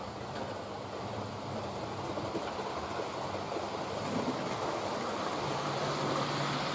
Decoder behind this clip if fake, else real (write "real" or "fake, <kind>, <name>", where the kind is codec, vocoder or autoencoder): real